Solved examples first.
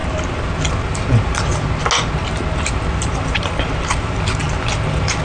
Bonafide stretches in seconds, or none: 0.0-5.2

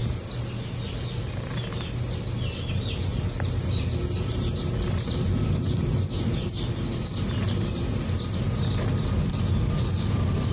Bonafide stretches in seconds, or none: 0.0-1.2

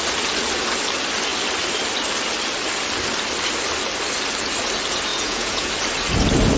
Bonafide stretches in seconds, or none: 0.0-5.1; 5.7-6.6